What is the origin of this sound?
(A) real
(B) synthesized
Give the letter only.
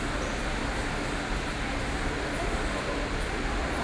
A